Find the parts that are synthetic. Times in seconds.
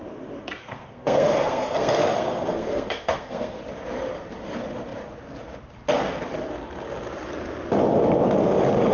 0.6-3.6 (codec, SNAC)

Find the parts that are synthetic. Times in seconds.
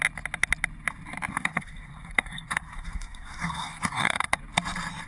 1.3-4.4 (codec, SNAC)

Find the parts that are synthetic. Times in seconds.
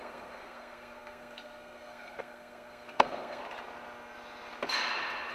0.0-3.4 (codec, SNAC)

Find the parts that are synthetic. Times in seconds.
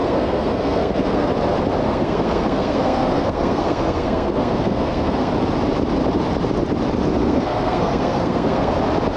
0.0-1.3 (codec, SNAC); 1.8-5.3; 7.2-8.7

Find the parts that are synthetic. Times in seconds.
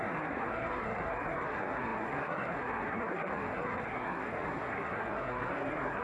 0.0-6.0 (codec, SNAC)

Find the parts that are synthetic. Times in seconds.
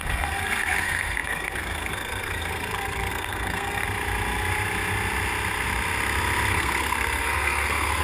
0.0-3.8 (codec, SNAC); 6.5-8.0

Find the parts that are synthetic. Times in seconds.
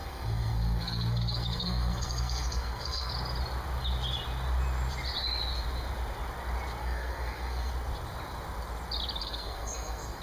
0.0-3.1 (codec, SNAC); 6.8-7.7; 9.2-10.2